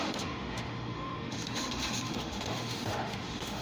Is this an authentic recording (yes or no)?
no